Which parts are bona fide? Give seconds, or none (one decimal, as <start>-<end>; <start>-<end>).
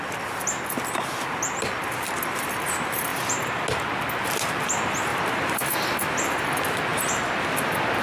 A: 0.0-5.1; 5.6-6.9; 7.4-8.0